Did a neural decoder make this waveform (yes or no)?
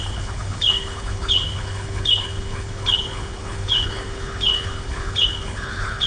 yes